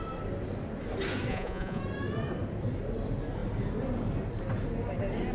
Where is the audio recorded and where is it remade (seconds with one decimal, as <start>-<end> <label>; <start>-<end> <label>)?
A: 0.0-1.3 recorded; 1.3-1.8 remade; 1.8-5.3 recorded